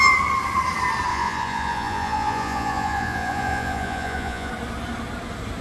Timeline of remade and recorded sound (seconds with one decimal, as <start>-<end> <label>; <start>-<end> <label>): 0.0-1.1 recorded; 1.1-4.5 remade; 4.5-5.6 recorded